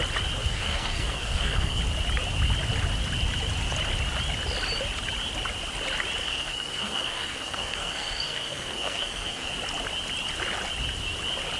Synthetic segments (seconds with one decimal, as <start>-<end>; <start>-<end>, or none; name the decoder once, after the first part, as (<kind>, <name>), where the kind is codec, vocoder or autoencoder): 0.4-1.8 (codec, SNAC); 6.2-9.5